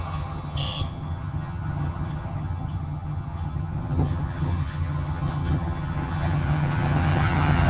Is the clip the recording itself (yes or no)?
no